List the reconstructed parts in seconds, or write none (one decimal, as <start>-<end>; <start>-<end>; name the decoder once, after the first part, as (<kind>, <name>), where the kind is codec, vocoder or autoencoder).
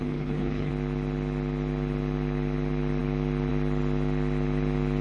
0.0-0.7 (codec, HILCodec)